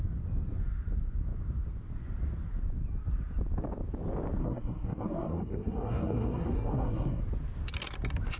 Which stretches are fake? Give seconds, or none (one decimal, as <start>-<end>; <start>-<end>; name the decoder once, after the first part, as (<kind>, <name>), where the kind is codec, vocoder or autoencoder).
4.4-7.2 (codec, SNAC)